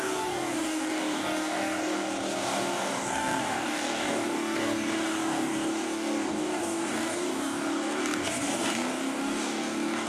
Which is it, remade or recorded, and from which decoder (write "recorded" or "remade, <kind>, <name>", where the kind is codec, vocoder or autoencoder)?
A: remade, codec, DAC